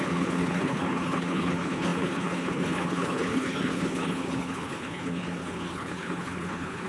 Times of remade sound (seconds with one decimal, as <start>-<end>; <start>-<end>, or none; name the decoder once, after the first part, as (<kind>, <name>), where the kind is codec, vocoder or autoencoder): 0.0-6.9 (codec, HILCodec)